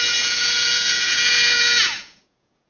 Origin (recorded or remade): remade